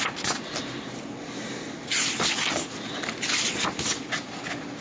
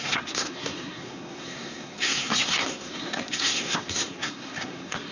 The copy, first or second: second